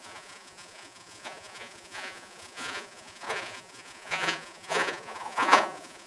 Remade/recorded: remade